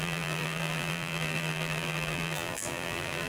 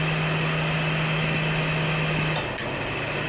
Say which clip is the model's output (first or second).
first